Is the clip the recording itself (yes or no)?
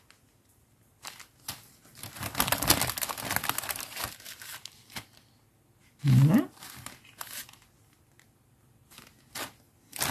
yes